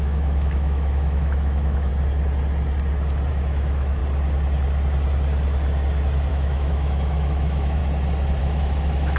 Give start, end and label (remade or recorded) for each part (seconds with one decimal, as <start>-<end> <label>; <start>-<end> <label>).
0.0-1.9 remade; 1.9-3.3 recorded; 3.3-4.0 remade; 4.0-6.3 recorded; 6.3-7.8 remade; 7.8-8.4 recorded; 8.4-9.2 remade